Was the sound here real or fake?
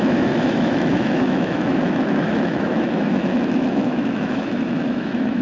fake